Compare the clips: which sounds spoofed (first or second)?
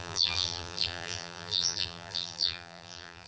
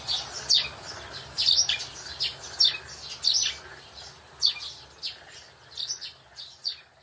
first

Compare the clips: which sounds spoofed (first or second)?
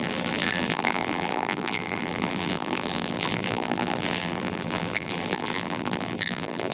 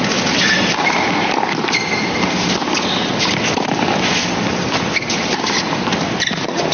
first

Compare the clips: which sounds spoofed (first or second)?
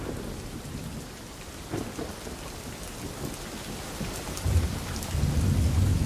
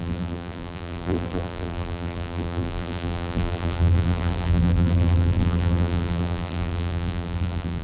second